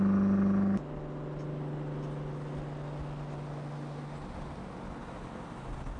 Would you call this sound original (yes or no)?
yes